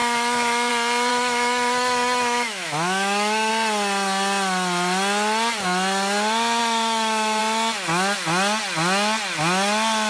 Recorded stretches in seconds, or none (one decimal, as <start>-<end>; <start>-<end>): 0.7-1.1; 3.5-6.6; 7.4-10.1